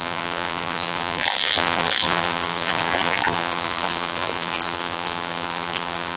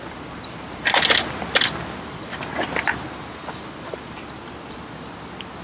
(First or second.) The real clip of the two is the second